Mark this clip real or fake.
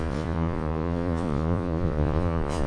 fake